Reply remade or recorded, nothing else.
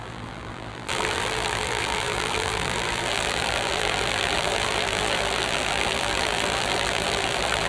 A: remade